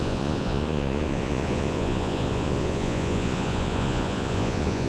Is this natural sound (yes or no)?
no